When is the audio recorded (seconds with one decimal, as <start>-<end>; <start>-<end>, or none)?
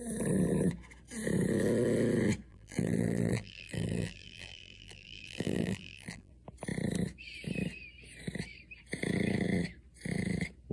0.0-2.5; 6.3-10.7